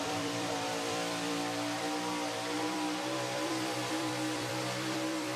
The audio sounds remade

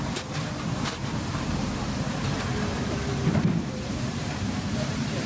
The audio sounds remade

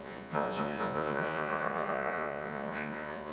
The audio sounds remade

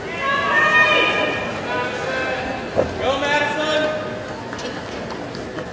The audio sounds recorded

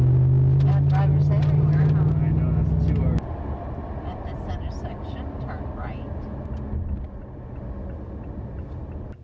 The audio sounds recorded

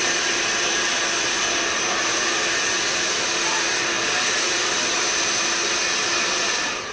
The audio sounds recorded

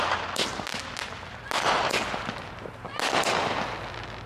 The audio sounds recorded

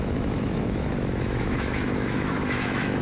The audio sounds remade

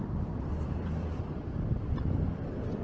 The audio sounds remade